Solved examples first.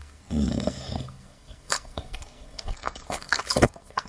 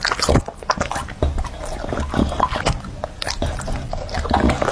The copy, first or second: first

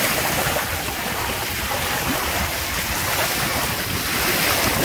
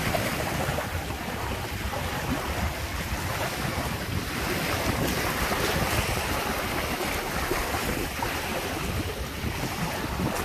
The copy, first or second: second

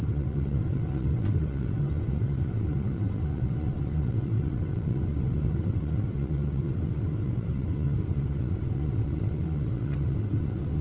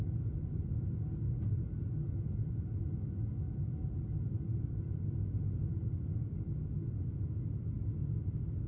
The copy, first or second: first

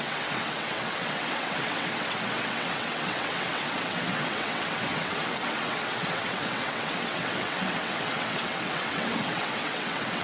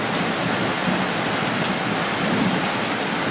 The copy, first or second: first